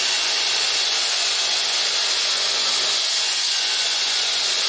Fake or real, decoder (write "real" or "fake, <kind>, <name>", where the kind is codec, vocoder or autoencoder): fake, vocoder, Vocos